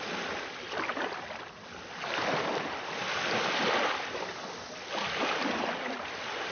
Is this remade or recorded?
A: recorded